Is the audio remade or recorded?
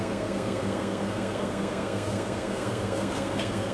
remade